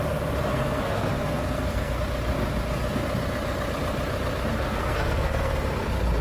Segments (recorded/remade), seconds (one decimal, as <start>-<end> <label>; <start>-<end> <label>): 0.0-0.5 recorded; 0.5-2.0 remade; 2.0-4.5 recorded; 4.5-5.7 remade; 5.7-6.2 recorded